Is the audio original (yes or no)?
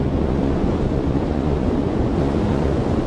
no